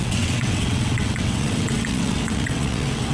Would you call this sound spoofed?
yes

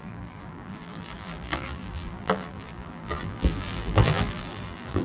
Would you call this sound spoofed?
yes